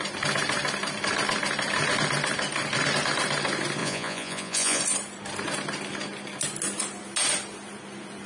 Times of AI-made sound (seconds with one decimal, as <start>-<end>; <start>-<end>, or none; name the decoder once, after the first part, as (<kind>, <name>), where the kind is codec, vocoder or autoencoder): 3.8-4.8 (vocoder, Vocos)